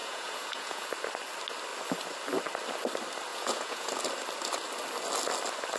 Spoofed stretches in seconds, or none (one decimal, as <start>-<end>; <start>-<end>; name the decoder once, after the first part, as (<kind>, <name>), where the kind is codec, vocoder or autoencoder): 0.0-0.9 (vocoder, Vocos); 3.3-3.9